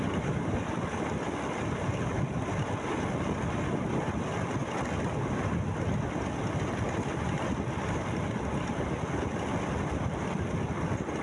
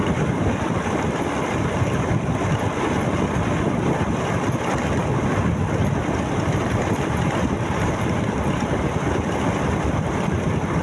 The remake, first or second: second